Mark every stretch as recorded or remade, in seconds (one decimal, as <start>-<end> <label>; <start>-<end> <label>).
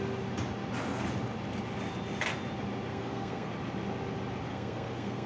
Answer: 0.0-2.9 recorded; 2.9-3.5 remade; 3.5-4.5 recorded; 4.5-5.3 remade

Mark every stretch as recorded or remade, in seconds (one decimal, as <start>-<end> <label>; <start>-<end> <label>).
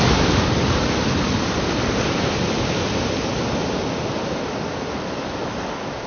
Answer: 0.0-6.1 recorded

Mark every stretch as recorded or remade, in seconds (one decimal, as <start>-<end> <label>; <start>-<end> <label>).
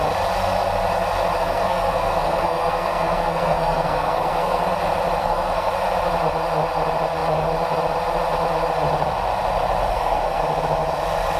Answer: 0.0-1.4 recorded; 1.4-4.6 remade; 4.6-5.2 recorded; 5.2-5.7 remade; 5.7-9.9 recorded; 9.9-10.4 remade; 10.4-11.4 recorded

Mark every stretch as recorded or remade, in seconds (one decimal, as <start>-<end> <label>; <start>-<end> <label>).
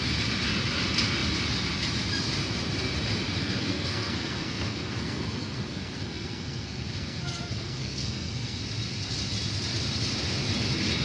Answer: 0.0-3.4 recorded; 3.4-8.6 remade; 8.6-11.0 recorded